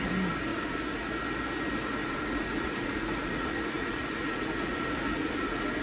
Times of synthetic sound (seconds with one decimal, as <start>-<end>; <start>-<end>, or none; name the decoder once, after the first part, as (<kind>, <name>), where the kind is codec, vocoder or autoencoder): 0.5-1.1 (vocoder, Vocos); 2.0-5.8